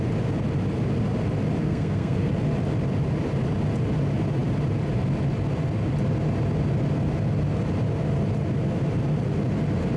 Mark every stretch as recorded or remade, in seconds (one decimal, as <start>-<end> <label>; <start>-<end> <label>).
0.0-1.6 recorded; 1.6-2.3 remade; 2.3-10.0 recorded